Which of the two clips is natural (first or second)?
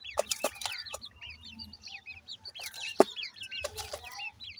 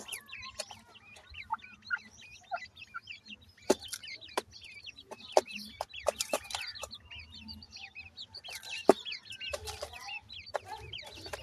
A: second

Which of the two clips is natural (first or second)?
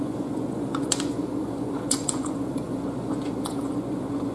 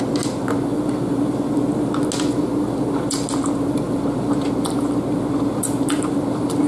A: second